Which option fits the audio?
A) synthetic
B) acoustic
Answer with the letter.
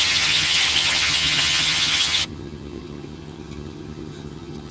A